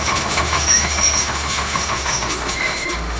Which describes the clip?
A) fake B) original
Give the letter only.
A